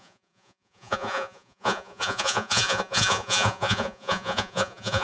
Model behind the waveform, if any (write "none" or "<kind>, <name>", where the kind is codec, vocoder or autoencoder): vocoder, Vocos